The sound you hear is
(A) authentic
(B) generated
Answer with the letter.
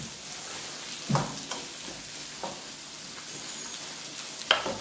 A